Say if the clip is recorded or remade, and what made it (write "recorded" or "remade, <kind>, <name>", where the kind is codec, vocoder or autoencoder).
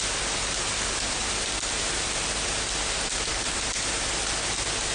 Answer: recorded